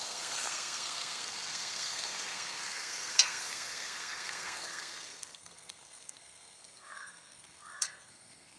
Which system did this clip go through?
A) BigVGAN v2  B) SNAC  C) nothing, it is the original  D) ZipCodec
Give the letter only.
B